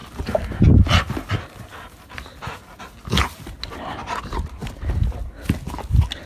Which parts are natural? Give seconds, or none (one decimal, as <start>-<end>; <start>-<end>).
0.0-6.3

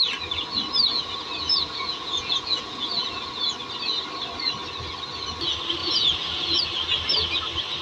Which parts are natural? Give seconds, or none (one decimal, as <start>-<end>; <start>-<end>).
0.0-0.9; 3.4-5.8; 6.6-7.8